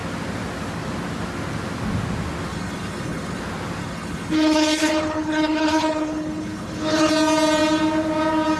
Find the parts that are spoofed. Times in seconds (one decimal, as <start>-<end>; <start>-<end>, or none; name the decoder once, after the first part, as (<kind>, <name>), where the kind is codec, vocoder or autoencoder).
2.5-3.4 (codec, HILCodec); 3.8-7.1